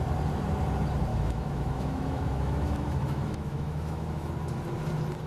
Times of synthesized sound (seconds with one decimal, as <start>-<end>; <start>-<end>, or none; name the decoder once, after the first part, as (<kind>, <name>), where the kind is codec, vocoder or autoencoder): 1.1-4.3 (autoencoder, DAC-VAE)